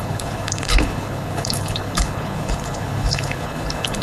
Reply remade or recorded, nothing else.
remade